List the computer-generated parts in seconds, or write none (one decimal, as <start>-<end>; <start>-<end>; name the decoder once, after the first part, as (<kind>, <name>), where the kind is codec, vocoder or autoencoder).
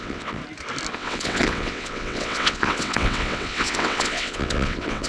0.0-0.4 (vocoder, WaveNeXt); 0.9-5.1